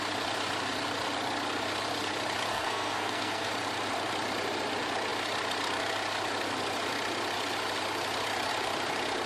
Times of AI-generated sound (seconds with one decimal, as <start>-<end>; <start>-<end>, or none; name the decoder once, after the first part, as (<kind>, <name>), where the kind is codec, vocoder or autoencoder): 2.5-3.5 (codec, SNAC)